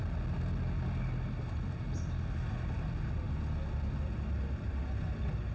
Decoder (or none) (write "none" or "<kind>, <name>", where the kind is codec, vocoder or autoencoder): none